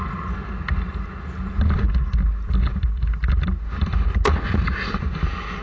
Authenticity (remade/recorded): recorded